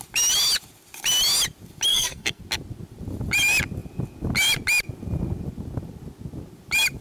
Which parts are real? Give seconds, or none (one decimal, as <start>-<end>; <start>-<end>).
0.0-1.9; 2.4-7.0